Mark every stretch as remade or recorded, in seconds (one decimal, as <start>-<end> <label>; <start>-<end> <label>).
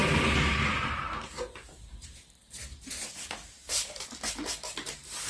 0.0-2.8 remade; 2.8-5.3 recorded